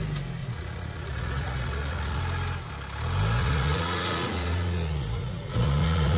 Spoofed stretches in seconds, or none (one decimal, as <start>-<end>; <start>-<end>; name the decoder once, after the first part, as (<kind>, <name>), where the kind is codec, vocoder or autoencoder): 0.4-2.2 (vocoder, Vocos); 3.4-6.2